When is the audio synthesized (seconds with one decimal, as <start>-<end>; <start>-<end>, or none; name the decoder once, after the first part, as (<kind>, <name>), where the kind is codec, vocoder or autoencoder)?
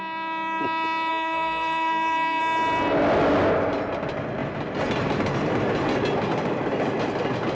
1.1-2.4 (codec, SNAC)